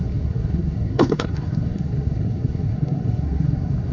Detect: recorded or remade remade